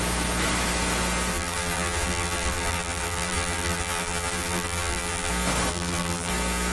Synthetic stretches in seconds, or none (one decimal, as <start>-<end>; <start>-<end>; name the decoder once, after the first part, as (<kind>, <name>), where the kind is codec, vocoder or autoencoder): 1.3-5.3 (vocoder, BigVGAN v2); 5.7-6.3